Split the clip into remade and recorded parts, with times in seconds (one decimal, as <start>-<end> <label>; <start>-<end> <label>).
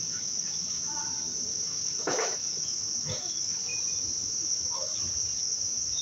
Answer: 0.0-0.9 remade; 0.9-1.5 recorded; 1.5-3.7 remade; 3.7-4.2 recorded; 4.2-4.9 remade; 4.9-5.4 recorded; 5.4-6.0 remade